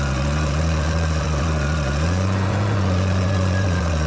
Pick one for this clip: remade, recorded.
remade